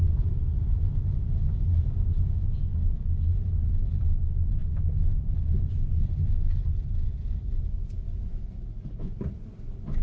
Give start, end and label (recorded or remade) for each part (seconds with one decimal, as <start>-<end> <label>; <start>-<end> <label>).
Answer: 0.0-10.0 recorded